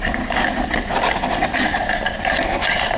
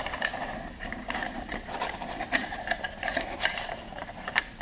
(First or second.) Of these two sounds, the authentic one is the first